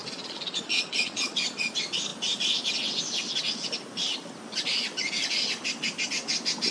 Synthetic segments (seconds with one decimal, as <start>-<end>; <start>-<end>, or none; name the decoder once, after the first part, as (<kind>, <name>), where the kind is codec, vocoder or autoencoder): 0.0-1.7 (vocoder, Vocos)